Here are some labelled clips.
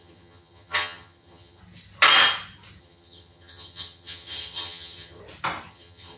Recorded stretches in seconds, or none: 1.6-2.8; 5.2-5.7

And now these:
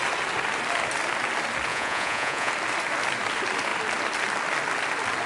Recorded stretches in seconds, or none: 0.0-1.7; 2.5-5.3

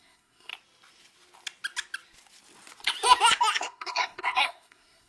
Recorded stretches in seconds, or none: 0.5-3.6

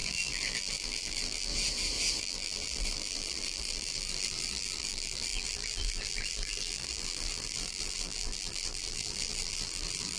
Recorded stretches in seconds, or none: 1.5-2.2

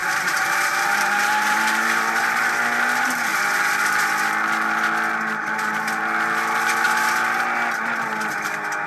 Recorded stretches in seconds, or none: 2.1-8.9